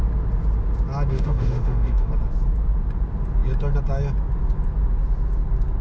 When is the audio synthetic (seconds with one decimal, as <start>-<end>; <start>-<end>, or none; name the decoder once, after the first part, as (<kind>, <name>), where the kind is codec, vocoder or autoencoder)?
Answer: 1.1-2.1 (autoencoder, DAC-VAE)